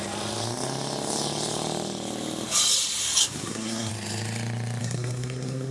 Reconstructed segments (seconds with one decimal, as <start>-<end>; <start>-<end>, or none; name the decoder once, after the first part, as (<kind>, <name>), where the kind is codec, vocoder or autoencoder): 3.2-3.9 (codec, SNAC); 4.8-5.7